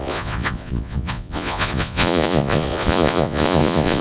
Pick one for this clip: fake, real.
fake